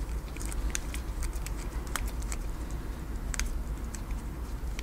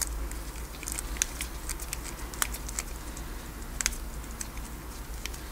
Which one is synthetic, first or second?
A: first